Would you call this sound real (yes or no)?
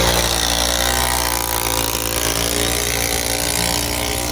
yes